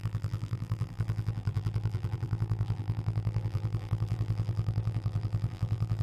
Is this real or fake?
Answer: fake